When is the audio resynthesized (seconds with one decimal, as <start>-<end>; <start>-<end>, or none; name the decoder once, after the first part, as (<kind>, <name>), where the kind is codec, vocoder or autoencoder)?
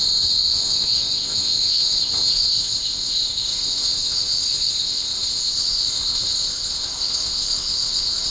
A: 0.0-8.3 (codec, ZipCodec)